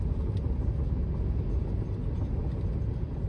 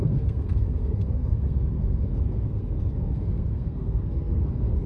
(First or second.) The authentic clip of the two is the first